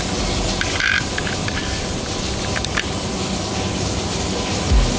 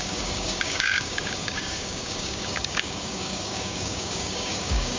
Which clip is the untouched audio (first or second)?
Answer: first